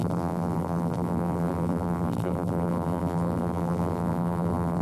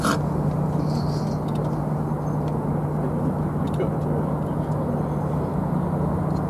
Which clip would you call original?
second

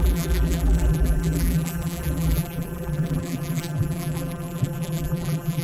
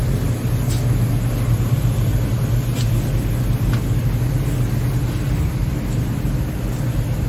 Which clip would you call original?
second